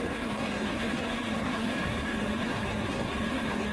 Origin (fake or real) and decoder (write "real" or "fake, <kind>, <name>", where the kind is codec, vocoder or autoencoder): fake, codec, SNAC